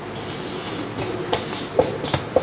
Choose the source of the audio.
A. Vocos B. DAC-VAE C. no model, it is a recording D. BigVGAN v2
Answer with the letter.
C